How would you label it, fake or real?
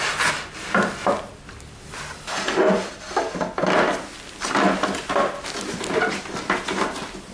real